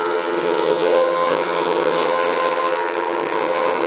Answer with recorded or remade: remade